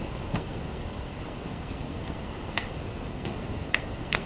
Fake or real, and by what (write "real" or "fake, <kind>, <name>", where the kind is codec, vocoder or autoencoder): fake, codec, SNAC